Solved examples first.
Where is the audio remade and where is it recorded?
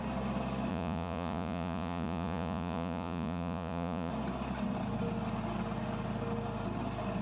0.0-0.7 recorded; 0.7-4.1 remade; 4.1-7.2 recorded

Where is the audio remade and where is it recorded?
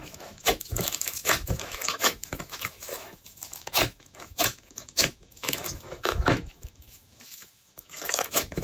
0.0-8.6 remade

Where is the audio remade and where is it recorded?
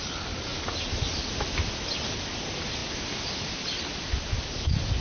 0.0-5.0 recorded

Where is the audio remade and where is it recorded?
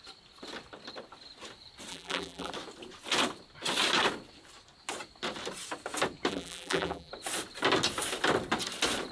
0.0-1.9 recorded; 1.9-2.5 remade; 2.5-6.3 recorded; 6.3-7.1 remade; 7.1-9.1 recorded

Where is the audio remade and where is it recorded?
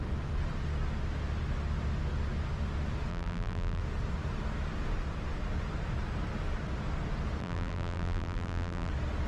0.0-3.1 recorded; 3.1-3.8 remade; 3.8-7.4 recorded; 7.4-8.9 remade; 8.9-9.3 recorded